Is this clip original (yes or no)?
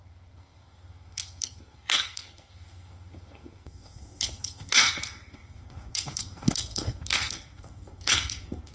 no